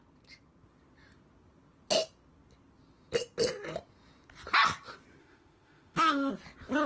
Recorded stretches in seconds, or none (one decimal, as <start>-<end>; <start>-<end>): 0.0-5.2; 6.3-6.9